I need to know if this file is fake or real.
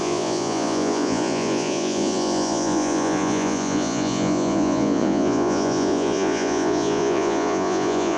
fake